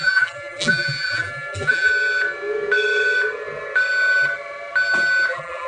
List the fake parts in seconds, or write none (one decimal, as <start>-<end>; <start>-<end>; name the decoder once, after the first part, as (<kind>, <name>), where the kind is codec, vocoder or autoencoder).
0.0-1.9 (vocoder, BigVGAN v2); 5.3-5.7